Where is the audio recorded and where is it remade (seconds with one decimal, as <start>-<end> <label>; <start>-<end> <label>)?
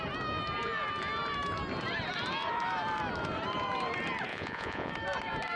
0.0-4.3 recorded; 4.3-4.9 remade; 4.9-5.6 recorded